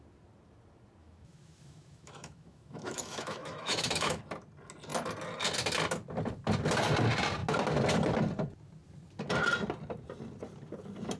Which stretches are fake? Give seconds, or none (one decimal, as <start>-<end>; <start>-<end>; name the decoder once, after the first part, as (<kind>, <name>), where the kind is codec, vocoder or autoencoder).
1.0-4.2 (autoencoder, DAC-VAE)